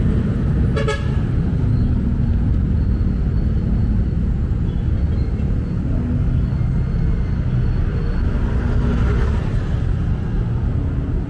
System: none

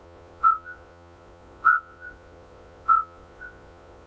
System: vocoder, Vocos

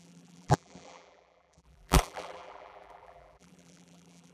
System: vocoder, BigVGAN v2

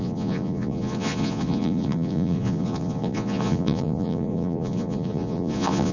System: vocoder, Vocos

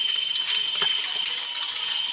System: none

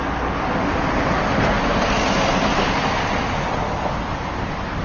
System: none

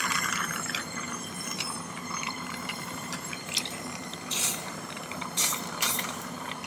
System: vocoder, BigVGAN v2